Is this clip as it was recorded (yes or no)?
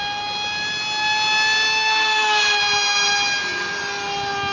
yes